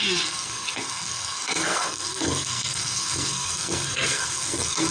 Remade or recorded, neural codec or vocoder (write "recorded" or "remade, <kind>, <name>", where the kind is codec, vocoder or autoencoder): remade, codec, SNAC